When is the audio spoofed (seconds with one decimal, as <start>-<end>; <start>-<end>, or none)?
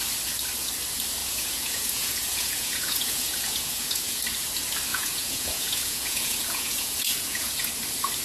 1.2-4.2; 4.9-7.7